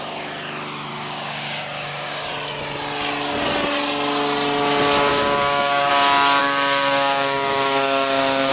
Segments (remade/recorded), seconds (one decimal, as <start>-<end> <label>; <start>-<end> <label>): 0.0-0.9 recorded; 0.9-2.3 remade; 2.3-5.1 recorded; 5.1-5.9 remade; 5.9-6.4 recorded; 6.4-8.5 remade